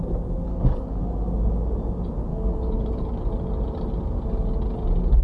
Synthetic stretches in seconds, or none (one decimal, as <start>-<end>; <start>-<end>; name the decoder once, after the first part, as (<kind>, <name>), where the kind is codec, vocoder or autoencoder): 0.5-1.0 (codec, DAC); 2.3-3.2